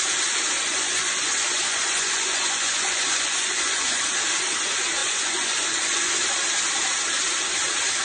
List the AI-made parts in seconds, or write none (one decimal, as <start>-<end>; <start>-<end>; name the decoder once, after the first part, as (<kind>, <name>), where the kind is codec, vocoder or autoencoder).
0.6-4.0 (vocoder, Vocos); 5.0-6.1

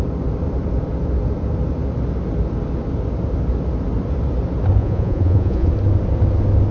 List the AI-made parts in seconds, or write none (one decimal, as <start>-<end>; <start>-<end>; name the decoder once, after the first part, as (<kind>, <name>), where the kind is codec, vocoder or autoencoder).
4.8-5.7 (vocoder, Vocos)